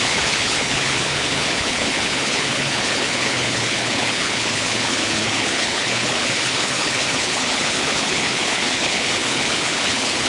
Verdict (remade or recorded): remade